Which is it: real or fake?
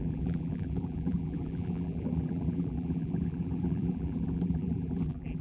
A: fake